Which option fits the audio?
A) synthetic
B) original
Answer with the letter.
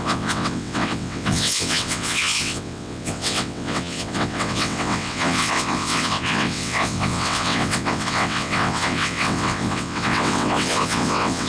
A